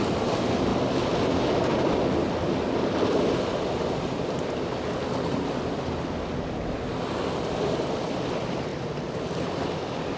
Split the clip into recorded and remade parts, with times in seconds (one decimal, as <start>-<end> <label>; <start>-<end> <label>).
0.0-10.2 recorded